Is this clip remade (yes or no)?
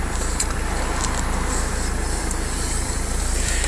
yes